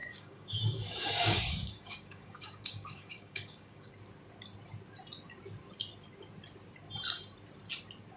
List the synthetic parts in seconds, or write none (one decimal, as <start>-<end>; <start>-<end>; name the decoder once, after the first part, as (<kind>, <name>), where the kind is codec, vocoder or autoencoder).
0.0-3.9 (codec, DAC)